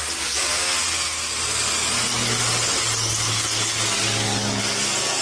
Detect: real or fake real